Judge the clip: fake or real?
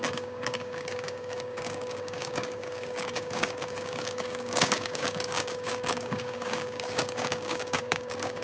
fake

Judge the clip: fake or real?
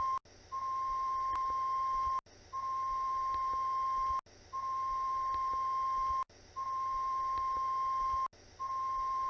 real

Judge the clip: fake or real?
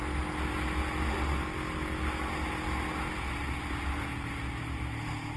real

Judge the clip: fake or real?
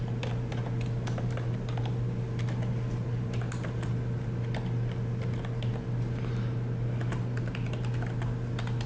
real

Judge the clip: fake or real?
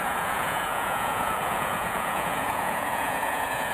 fake